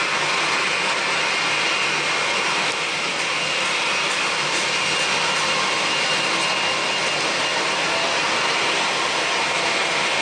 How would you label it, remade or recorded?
recorded